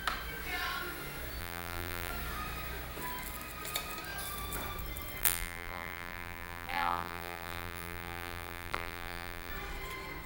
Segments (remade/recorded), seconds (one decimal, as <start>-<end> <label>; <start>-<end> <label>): 0.0-1.4 recorded; 1.4-2.1 remade; 2.1-5.2 recorded; 5.2-9.5 remade; 9.5-10.3 recorded